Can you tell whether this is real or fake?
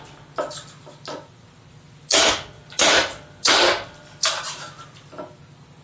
real